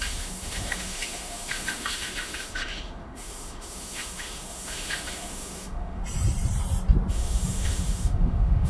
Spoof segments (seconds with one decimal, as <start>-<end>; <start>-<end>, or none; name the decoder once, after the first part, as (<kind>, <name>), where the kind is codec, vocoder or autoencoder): 0.0-6.0 (autoencoder, DAC-VAE); 7.1-8.7